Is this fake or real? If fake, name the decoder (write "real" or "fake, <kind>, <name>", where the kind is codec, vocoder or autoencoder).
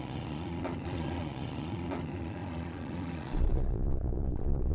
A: fake, vocoder, Vocos